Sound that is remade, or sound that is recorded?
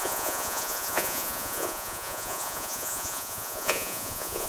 remade